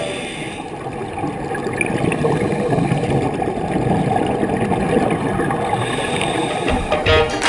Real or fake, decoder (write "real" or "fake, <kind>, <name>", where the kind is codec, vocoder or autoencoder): real